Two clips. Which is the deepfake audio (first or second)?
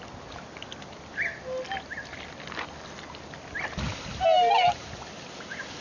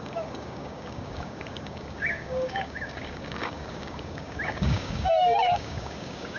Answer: second